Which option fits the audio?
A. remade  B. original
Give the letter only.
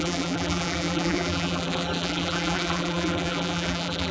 A